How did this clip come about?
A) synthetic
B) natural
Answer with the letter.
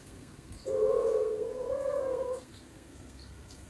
A